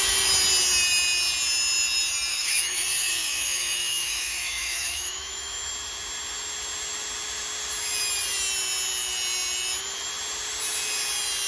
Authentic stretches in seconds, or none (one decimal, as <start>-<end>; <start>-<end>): 0.0-2.3; 5.7-11.5